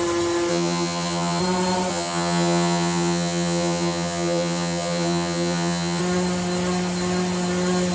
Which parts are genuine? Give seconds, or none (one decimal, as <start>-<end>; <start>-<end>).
0.0-0.5; 1.4-1.9; 6.0-7.9

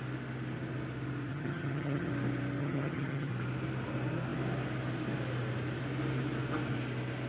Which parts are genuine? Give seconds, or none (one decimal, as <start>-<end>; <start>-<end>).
0.0-1.3; 2.1-2.6; 3.3-7.3

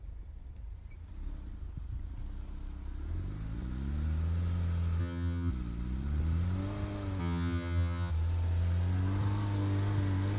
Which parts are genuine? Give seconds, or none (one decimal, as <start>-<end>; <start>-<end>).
0.0-5.0; 5.5-7.2; 8.1-10.4

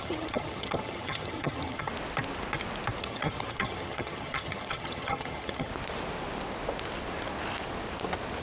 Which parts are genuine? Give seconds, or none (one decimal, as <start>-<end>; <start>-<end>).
1.9-3.0; 5.7-8.4

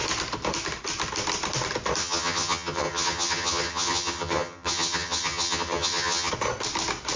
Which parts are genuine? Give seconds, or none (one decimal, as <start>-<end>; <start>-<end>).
0.0-2.0; 6.3-7.2